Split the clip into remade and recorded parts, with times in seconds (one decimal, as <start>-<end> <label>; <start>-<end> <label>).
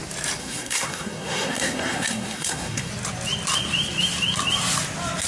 0.0-0.4 recorded; 0.4-2.9 remade; 2.9-5.3 recorded